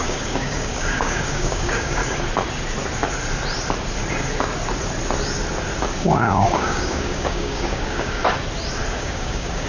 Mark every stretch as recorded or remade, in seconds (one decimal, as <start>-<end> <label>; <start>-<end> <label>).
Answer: 0.0-2.0 remade; 2.0-6.0 recorded; 6.0-8.2 remade; 8.2-8.9 recorded; 8.9-9.7 remade